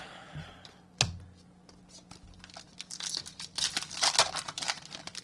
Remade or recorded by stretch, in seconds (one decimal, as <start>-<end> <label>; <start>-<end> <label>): 0.0-5.2 recorded